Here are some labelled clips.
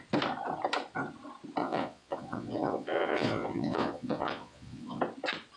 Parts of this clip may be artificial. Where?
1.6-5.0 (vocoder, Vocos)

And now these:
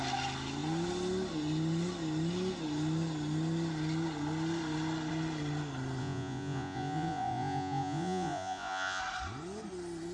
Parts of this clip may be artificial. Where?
6.0-9.0 (vocoder, Vocos)